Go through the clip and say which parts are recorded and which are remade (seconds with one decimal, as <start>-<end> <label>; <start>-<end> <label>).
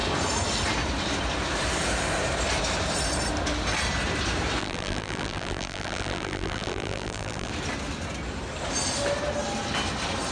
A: 0.0-4.6 recorded; 4.6-7.5 remade; 7.5-10.3 recorded